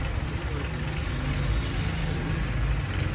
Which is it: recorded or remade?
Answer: recorded